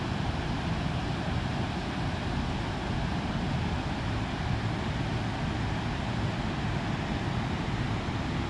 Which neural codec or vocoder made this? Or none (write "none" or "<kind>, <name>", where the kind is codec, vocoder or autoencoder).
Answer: none